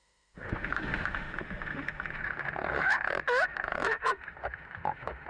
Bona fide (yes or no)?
no